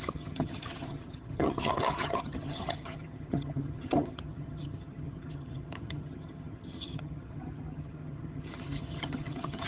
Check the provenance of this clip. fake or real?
fake